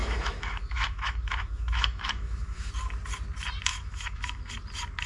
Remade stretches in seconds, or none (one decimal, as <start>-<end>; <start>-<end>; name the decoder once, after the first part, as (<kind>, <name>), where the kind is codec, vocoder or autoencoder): 0.0-2.7 (autoencoder, DAC-VAE); 3.7-4.5